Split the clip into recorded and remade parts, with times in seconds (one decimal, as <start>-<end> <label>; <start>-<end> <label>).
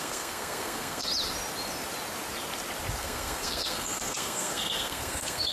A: 0.0-1.1 remade; 1.1-3.0 recorded; 3.0-5.5 remade